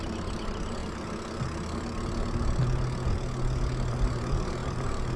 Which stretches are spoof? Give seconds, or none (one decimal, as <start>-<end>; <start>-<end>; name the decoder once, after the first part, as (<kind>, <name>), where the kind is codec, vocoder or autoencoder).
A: 0.0-0.8 (vocoder, BigVGAN v2); 3.9-5.2